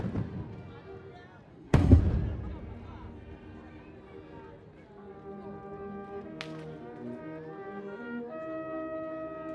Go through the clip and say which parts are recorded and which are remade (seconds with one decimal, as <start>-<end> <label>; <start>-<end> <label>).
0.0-1.5 recorded; 1.5-2.0 remade; 2.0-9.5 recorded